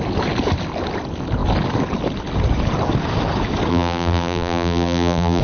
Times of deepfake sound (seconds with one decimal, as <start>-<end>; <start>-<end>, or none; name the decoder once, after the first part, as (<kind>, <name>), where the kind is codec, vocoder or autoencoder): 3.7-5.4 (vocoder, BigVGAN v2)